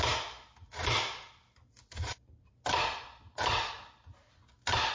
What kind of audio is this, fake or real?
real